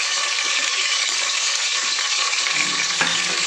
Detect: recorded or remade remade